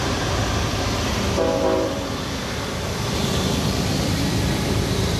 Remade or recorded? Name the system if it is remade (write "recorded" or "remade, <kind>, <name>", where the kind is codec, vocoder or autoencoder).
remade, vocoder, BigVGAN v2